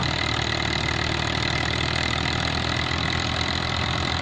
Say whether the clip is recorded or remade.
recorded